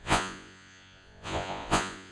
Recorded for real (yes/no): no